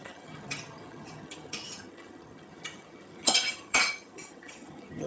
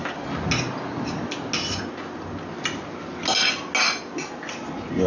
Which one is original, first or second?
second